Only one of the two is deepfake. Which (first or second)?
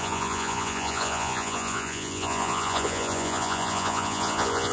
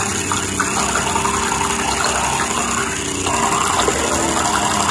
first